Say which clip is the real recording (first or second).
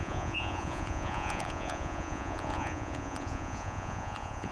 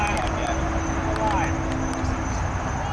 second